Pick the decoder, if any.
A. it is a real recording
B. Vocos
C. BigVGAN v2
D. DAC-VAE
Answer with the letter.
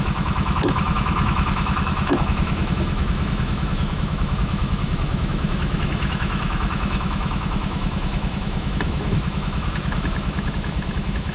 D